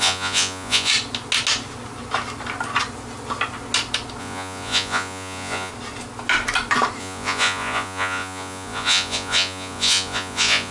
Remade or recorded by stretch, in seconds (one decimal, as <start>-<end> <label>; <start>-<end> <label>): 0.0-0.9 remade; 0.9-4.2 recorded; 4.2-5.7 remade; 5.7-7.0 recorded; 7.0-10.7 remade